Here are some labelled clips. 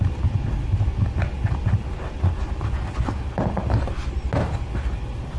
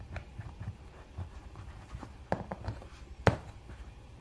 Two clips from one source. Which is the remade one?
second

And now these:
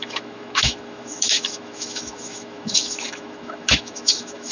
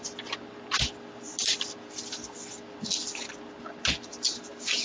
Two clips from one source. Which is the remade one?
first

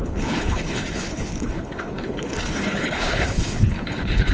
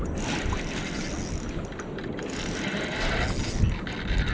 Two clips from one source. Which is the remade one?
first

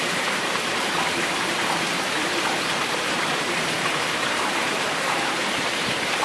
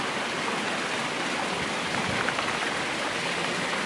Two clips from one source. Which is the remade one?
first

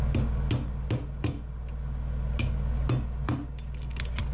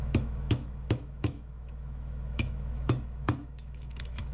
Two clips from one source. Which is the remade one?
second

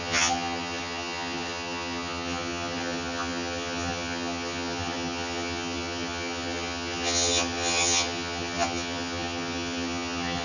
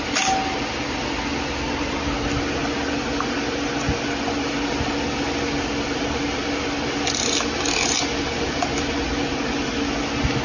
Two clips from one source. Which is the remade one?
first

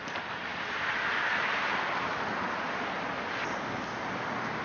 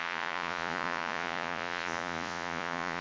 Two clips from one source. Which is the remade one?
second